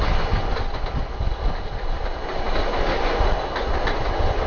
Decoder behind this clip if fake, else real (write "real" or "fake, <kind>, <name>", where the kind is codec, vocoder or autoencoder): real